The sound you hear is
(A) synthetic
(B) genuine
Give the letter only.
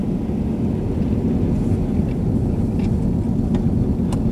B